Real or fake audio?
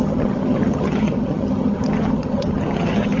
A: fake